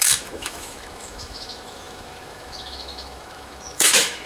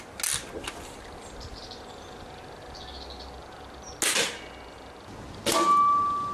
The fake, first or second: first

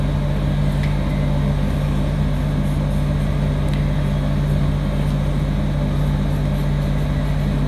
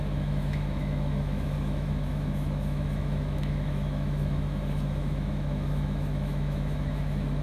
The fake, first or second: second